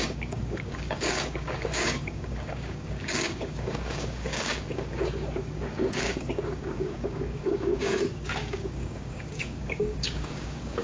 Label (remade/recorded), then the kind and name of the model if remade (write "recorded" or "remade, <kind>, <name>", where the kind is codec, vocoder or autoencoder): remade, codec, DAC